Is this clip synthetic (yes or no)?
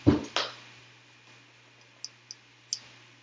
no